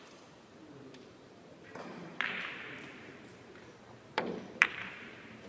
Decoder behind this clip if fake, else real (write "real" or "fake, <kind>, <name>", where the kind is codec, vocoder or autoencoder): fake, vocoder, BigVGAN v2